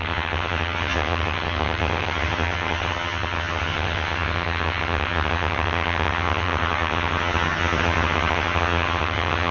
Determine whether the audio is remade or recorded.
remade